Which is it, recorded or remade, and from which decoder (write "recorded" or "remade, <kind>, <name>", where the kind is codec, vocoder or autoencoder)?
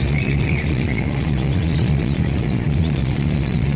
remade, vocoder, Vocos